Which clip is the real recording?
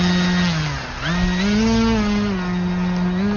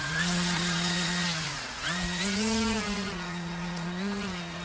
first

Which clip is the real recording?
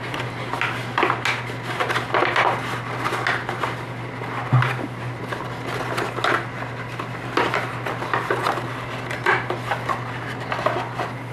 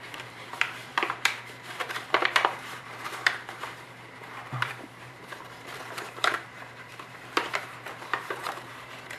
first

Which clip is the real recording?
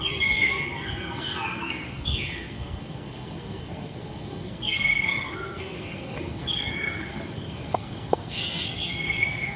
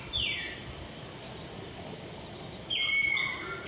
second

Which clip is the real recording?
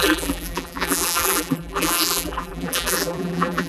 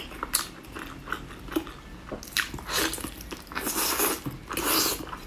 second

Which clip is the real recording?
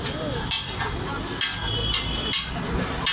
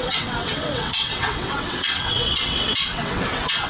first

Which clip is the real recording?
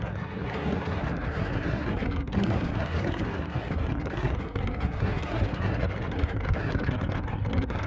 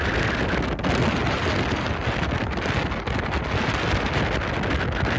second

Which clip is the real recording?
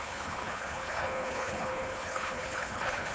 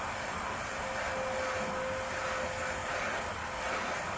second